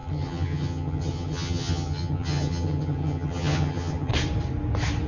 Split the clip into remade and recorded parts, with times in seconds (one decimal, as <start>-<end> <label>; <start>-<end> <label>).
0.0-4.1 remade; 4.1-5.1 recorded